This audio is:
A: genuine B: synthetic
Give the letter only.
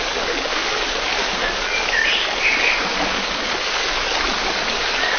B